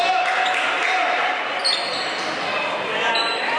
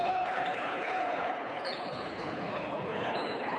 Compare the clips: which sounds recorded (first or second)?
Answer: first